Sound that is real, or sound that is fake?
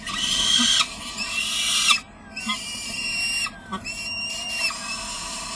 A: real